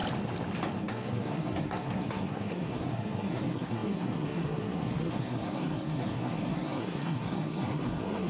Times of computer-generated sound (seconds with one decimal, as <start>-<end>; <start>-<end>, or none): 0.8-8.3